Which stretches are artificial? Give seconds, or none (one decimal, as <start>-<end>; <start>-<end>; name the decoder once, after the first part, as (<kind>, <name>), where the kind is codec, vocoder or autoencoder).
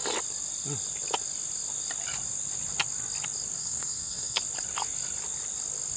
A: 3.6-4.4 (codec, SNAC)